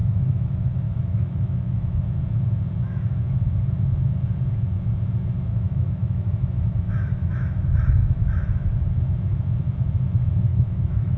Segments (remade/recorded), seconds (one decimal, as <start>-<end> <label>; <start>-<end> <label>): 0.0-2.0 remade; 2.0-5.5 recorded; 5.5-8.7 remade; 8.7-10.5 recorded; 10.5-11.2 remade